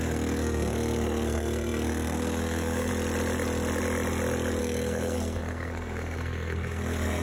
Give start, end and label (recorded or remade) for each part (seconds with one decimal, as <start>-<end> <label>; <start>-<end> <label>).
0.0-2.9 remade; 2.9-4.6 recorded; 4.6-7.2 remade